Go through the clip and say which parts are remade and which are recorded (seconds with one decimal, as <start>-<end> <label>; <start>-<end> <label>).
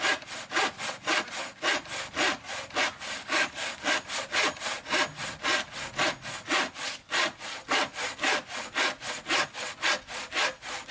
0.0-3.2 recorded; 3.2-3.9 remade; 3.9-10.9 recorded